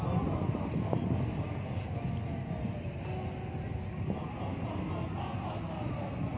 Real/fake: real